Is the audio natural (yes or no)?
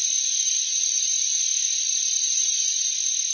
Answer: no